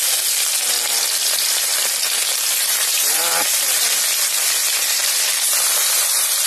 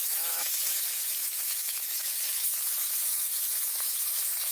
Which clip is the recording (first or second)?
first